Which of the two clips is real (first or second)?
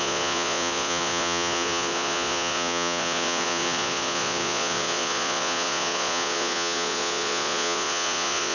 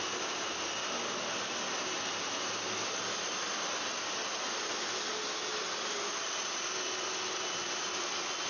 second